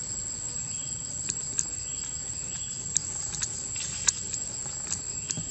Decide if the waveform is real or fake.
real